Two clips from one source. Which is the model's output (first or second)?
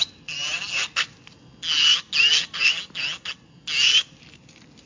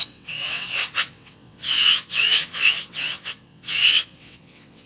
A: second